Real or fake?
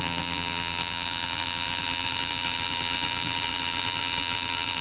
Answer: fake